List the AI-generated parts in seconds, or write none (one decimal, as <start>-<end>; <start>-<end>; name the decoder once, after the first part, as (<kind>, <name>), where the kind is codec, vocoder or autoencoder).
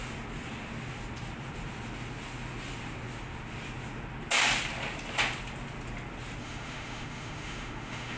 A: 6.4-8.2 (autoencoder, DAC-VAE)